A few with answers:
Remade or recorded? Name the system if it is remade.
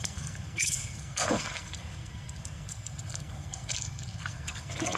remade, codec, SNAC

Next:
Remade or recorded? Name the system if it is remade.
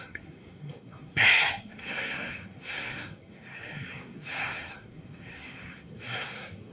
remade, codec, SNAC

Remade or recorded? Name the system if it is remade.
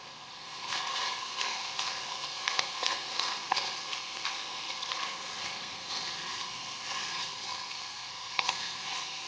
remade, codec, SNAC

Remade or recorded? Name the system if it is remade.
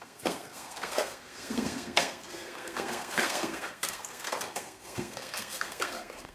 remade, codec, SNAC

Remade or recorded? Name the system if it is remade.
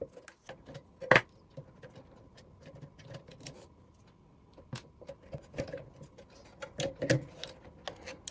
recorded